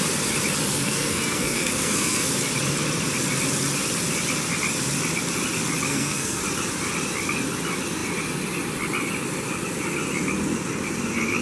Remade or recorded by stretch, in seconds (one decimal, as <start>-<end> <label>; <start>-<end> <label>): 0.0-0.7 recorded; 0.7-2.3 remade; 2.3-5.9 recorded; 5.9-6.4 remade; 6.4-11.4 recorded